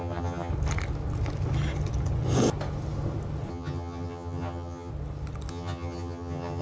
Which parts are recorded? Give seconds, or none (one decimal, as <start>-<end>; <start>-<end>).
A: 0.5-3.5; 4.9-5.5